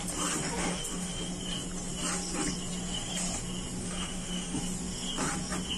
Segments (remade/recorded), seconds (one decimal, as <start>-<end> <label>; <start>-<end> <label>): 0.0-0.6 recorded; 0.6-1.3 remade; 1.3-3.8 recorded; 3.8-4.6 remade; 4.6-5.8 recorded